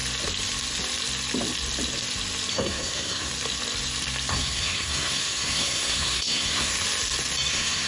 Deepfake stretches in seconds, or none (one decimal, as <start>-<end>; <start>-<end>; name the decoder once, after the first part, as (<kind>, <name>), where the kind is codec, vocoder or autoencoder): 2.5-3.3 (codec, SNAC); 4.3-6.7; 7.5-7.9